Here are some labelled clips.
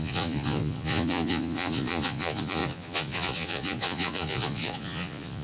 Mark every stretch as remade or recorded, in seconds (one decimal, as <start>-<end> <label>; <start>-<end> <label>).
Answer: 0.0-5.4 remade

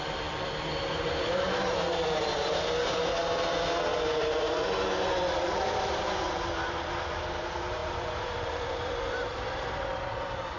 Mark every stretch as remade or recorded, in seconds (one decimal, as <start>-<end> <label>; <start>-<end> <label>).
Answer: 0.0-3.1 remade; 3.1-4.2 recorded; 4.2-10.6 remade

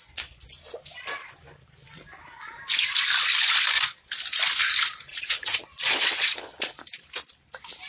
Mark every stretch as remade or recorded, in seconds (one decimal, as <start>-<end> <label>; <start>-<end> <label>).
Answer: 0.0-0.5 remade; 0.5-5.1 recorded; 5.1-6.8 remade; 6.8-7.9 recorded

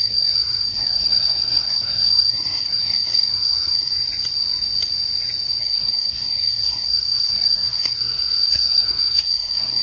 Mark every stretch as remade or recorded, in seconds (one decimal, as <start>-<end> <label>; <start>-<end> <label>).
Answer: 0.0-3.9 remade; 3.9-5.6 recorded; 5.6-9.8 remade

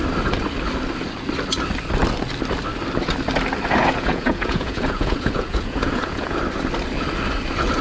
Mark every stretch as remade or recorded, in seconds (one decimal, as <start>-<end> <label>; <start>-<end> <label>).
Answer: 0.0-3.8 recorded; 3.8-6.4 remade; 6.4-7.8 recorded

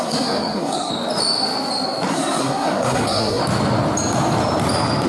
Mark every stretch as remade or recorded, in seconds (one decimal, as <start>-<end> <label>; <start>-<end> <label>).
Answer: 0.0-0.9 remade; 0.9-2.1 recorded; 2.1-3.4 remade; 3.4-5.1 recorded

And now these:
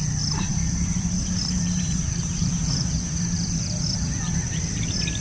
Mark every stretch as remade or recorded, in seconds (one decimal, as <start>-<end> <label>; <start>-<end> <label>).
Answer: 0.0-0.5 recorded; 0.5-3.6 remade; 3.6-5.2 recorded

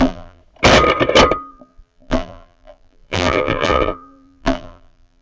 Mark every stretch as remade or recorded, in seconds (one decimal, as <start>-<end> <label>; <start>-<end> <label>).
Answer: 0.0-0.4 remade; 0.4-1.5 recorded; 1.5-5.2 remade